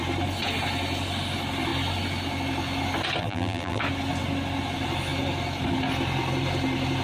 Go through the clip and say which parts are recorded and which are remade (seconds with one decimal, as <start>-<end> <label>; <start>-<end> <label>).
0.0-3.2 recorded; 3.2-3.8 remade; 3.8-7.0 recorded